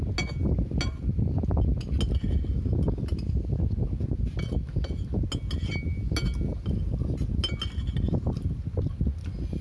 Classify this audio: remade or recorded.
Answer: recorded